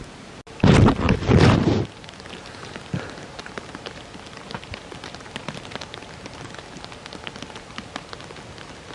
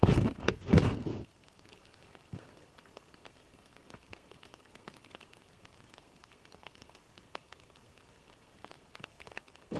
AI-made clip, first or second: second